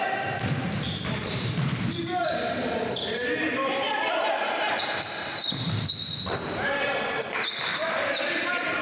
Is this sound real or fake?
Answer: fake